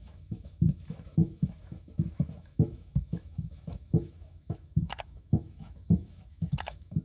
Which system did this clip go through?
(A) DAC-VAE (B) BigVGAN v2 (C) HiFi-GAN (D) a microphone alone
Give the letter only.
A